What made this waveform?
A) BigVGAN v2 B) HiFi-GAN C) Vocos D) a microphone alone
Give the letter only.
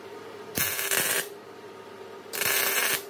A